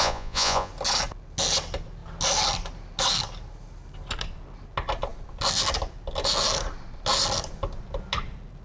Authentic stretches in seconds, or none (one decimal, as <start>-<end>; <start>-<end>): 0.7-8.6